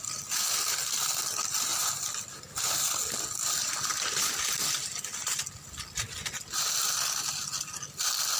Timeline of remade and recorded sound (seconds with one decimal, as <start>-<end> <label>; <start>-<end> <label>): 0.0-8.4 recorded